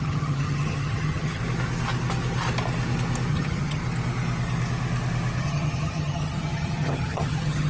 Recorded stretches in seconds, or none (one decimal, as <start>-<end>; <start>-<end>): 1.4-3.3; 3.8-5.4